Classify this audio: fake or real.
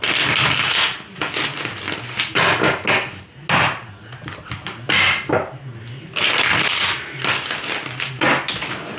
real